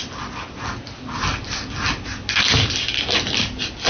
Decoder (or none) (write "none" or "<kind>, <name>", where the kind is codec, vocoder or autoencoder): none